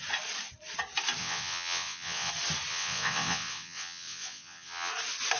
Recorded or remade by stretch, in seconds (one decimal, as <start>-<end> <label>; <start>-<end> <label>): 0.0-1.2 recorded; 1.2-2.3 remade; 2.3-2.7 recorded; 2.7-4.9 remade; 4.9-5.4 recorded